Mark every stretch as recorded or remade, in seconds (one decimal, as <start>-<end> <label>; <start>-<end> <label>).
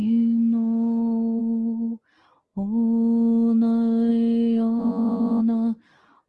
0.0-4.8 recorded; 4.8-5.4 remade; 5.4-6.3 recorded